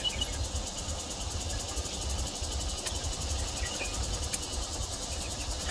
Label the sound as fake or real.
real